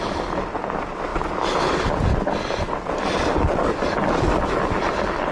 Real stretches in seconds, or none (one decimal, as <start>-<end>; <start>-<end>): 0.0-5.3